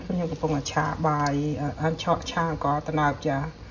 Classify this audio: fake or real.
real